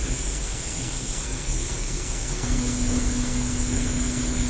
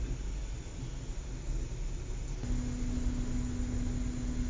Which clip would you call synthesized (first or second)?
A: first